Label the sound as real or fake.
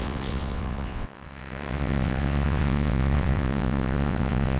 fake